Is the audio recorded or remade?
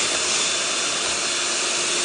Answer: recorded